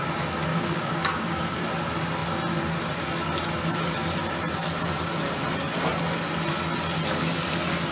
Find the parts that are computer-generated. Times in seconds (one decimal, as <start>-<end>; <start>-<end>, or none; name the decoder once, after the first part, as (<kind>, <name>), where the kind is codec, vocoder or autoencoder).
0.5-1.4 (codec, DAC)